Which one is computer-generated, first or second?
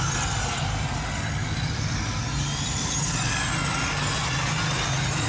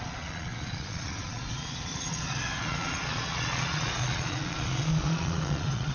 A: second